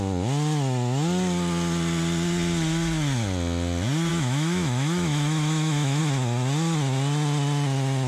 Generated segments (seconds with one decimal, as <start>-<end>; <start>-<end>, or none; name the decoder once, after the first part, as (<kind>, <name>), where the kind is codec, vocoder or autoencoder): 4.1-6.0 (autoencoder, DAC-VAE)